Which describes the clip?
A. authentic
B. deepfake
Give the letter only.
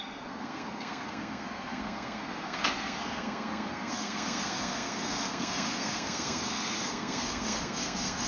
B